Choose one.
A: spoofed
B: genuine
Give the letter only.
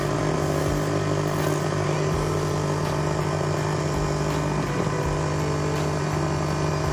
B